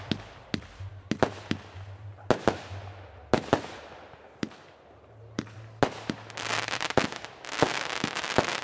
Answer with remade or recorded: recorded